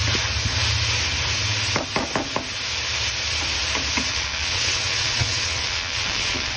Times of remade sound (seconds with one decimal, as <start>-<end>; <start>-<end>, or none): 4.1-6.6